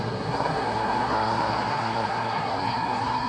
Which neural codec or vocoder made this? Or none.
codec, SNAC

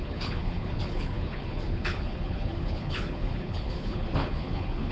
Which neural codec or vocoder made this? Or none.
codec, HILCodec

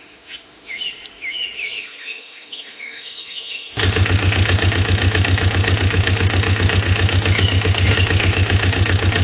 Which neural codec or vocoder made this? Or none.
autoencoder, DAC-VAE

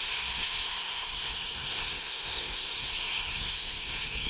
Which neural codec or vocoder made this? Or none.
codec, SNAC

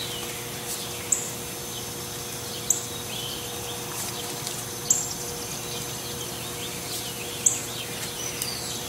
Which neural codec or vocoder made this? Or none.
none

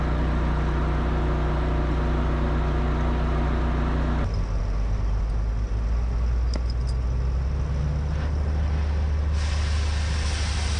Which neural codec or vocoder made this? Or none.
none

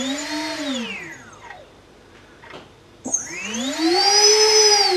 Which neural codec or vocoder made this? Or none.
vocoder, BigVGAN v2